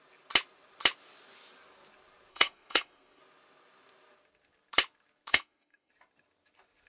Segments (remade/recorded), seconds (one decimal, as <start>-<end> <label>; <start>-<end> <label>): 0.0-2.3 recorded; 2.3-3.2 remade; 3.2-5.3 recorded; 5.3-5.9 remade; 5.9-6.9 recorded